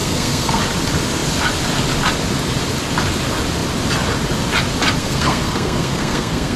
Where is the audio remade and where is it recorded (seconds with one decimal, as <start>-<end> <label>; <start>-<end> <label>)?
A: 0.0-0.6 remade; 0.6-5.0 recorded; 5.0-6.6 remade